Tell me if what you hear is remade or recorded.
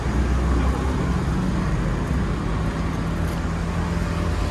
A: recorded